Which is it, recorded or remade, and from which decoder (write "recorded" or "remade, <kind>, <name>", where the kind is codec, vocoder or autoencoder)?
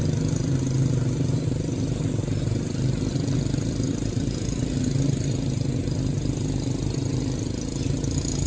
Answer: recorded